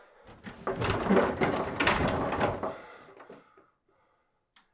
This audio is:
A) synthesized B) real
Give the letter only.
B